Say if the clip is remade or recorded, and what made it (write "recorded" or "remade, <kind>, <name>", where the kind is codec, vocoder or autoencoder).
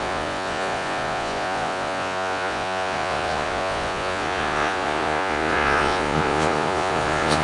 remade, vocoder, Vocos